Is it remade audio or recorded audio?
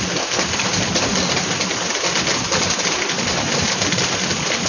recorded